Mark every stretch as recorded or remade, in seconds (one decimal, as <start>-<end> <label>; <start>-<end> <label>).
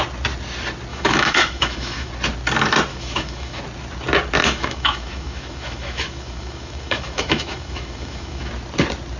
0.0-0.9 recorded; 0.9-2.1 remade; 2.1-2.9 recorded; 2.9-3.6 remade; 3.6-4.4 recorded; 4.4-8.5 remade; 8.5-9.2 recorded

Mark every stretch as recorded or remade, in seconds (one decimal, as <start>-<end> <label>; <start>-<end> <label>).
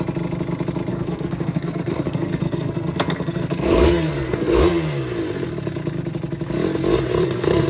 0.0-0.9 recorded; 0.9-4.6 remade; 4.6-7.2 recorded; 7.2-7.7 remade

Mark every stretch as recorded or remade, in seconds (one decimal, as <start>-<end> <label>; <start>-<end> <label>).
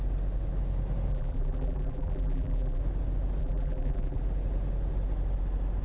0.0-1.1 recorded; 1.1-2.8 remade; 2.8-3.4 recorded; 3.4-4.2 remade; 4.2-5.8 recorded